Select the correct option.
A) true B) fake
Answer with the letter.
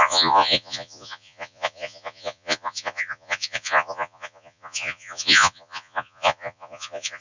B